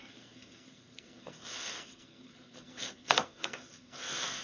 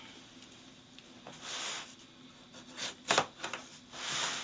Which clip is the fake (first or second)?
first